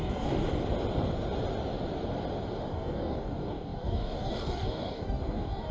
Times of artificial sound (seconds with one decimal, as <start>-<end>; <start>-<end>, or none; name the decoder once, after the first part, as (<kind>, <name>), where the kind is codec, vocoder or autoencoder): 0.0-0.4 (codec, DAC); 2.6-5.7